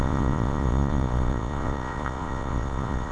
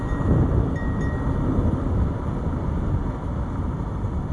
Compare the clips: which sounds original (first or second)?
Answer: second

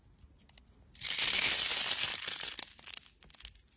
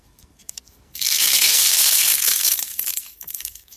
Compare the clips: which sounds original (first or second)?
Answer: first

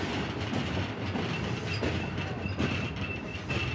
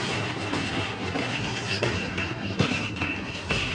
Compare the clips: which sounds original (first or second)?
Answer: first